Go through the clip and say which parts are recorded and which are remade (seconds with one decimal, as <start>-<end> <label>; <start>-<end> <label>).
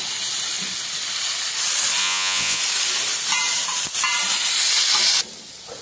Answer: 0.0-2.0 recorded; 2.0-2.6 remade; 2.6-5.8 recorded